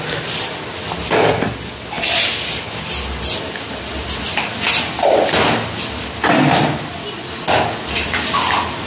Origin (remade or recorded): recorded